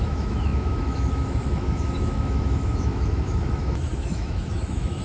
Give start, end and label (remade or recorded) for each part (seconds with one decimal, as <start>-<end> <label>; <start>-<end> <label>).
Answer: 0.0-5.0 remade